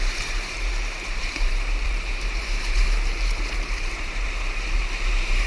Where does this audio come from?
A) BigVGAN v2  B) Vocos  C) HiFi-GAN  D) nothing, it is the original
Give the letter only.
A